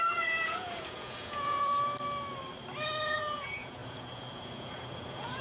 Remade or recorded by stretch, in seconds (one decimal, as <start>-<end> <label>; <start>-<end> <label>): 0.0-1.7 remade; 1.7-3.0 recorded; 3.0-5.4 remade